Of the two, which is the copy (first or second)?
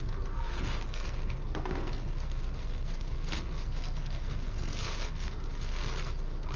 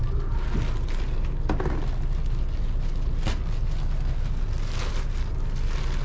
first